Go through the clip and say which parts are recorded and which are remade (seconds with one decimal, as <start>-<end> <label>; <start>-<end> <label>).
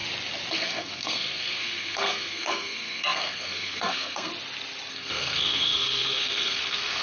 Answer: 0.0-0.5 recorded; 0.5-4.3 remade; 4.3-4.9 recorded; 4.9-7.0 remade